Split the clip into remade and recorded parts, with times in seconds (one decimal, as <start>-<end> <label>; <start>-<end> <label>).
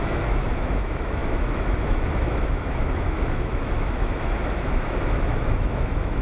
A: 0.0-6.2 remade